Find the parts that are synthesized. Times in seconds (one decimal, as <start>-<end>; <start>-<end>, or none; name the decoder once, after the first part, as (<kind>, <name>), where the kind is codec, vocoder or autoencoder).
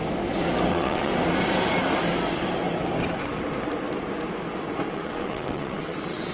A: 0.7-1.1 (vocoder, WaveNeXt); 4.9-6.3